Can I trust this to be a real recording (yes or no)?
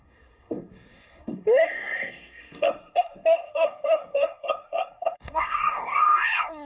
no